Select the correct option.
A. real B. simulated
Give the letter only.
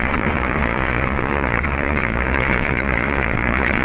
B